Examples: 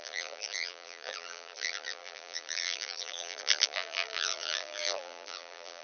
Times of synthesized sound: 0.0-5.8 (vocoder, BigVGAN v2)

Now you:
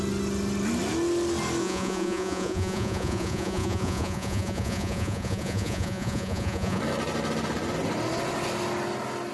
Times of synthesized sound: 1.6-6.8 (vocoder, Vocos)

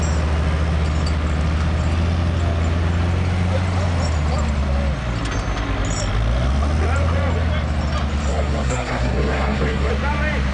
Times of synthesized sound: 8.3-9.9 (codec, SNAC)

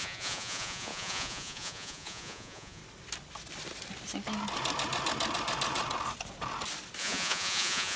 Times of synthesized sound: 0.0-2.8 (vocoder, Vocos); 7.0-8.0

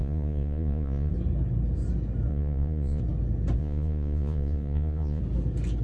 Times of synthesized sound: 0.0-1.1 (vocoder, Vocos); 2.3-3.0; 3.6-5.2

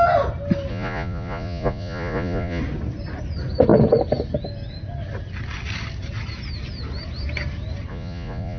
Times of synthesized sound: 0.7-2.6 (vocoder, Vocos); 7.9-8.6

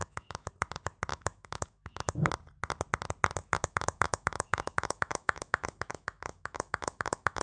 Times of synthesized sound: 0.0-0.5 (autoencoder, DAC-VAE); 1.1-2.3; 3.4-7.4